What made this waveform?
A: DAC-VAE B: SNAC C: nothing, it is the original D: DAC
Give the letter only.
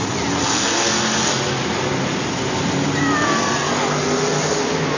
C